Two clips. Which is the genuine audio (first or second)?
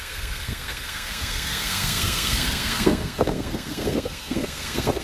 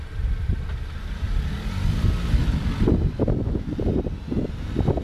second